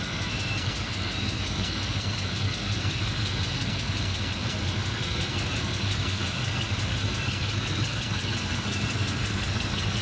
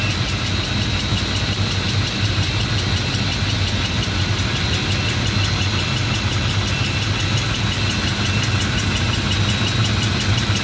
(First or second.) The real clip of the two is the second